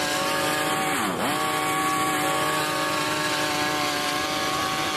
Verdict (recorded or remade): recorded